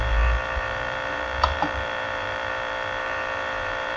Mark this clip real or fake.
fake